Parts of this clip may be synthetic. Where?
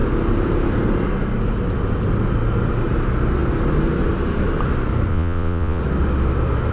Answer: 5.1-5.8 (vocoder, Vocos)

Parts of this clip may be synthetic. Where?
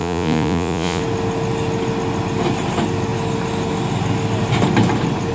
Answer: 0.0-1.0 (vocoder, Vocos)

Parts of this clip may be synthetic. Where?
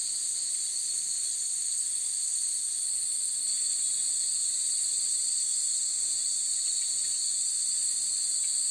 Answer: 5.5-7.6 (vocoder, Vocos)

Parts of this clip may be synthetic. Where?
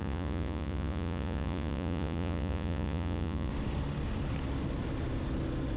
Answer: 0.0-3.5 (vocoder, Vocos)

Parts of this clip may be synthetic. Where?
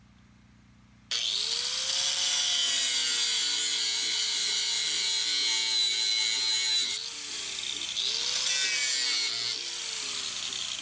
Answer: none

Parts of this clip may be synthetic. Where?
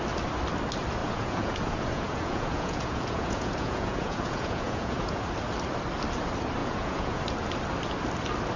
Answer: 1.0-5.2 (vocoder, Vocos); 6.6-7.2